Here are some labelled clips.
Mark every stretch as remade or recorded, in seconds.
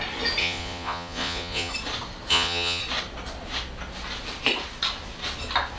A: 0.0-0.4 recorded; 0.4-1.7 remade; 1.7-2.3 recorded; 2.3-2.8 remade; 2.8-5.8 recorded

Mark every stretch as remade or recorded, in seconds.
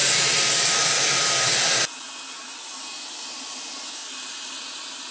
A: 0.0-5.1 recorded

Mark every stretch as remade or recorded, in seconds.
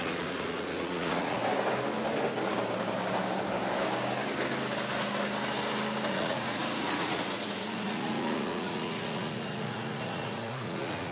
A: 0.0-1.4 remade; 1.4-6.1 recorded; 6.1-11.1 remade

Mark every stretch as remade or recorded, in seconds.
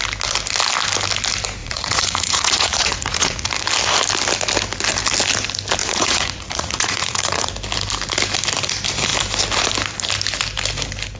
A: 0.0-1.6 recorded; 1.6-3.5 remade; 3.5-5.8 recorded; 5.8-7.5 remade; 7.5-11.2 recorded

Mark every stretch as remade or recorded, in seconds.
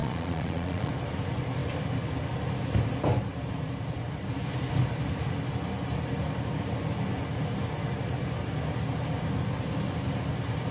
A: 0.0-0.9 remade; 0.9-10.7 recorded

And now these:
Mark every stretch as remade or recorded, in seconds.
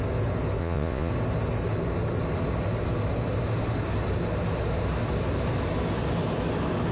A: 0.0-0.6 recorded; 0.6-1.1 remade; 1.1-6.9 recorded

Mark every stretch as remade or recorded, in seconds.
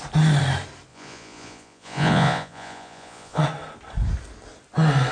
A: 0.0-0.9 recorded; 0.9-3.4 remade; 3.4-5.1 recorded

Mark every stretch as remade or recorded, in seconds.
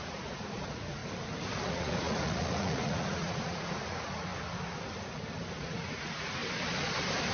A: 0.0-1.0 remade; 1.0-1.7 recorded; 1.7-4.3 remade; 4.3-5.5 recorded; 5.5-6.4 remade; 6.4-7.3 recorded